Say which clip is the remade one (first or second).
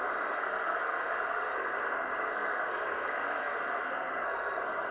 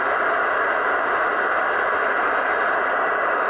first